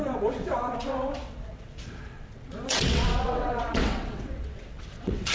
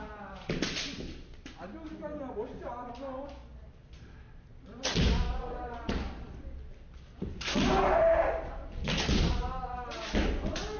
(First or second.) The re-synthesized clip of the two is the first